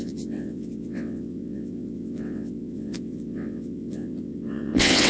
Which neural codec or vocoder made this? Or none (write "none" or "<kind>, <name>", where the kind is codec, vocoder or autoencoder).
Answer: vocoder, WaveNeXt